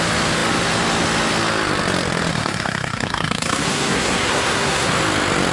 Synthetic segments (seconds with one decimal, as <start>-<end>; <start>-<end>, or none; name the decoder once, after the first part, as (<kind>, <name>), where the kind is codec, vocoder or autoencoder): 2.3-4.9 (codec, SNAC)